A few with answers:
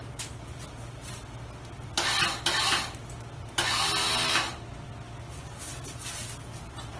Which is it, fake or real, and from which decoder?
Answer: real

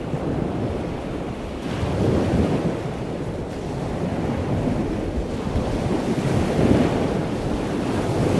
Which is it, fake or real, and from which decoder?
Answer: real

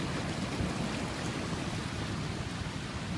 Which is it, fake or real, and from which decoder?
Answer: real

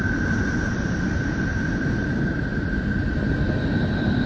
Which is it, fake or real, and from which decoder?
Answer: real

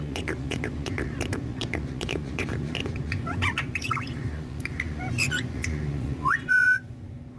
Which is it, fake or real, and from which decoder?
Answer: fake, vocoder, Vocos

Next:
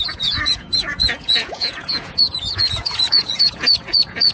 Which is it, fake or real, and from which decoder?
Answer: fake, vocoder, Vocos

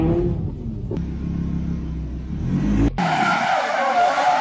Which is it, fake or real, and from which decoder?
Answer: real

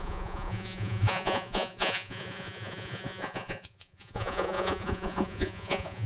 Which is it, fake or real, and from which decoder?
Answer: fake, vocoder, Vocos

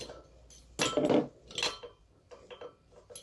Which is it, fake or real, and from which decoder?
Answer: real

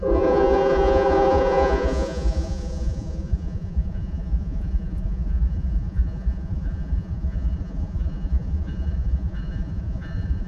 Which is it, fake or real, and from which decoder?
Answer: fake, vocoder, Vocos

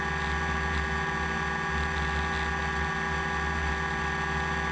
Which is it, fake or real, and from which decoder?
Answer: real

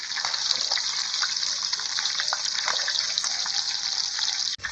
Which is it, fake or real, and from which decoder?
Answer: real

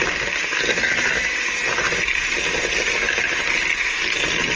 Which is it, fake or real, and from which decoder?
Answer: real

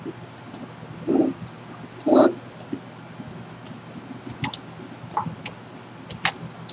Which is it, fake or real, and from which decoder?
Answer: real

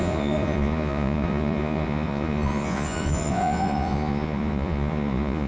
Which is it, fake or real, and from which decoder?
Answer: fake, vocoder, Vocos